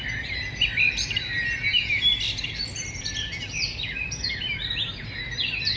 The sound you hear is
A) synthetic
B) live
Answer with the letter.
B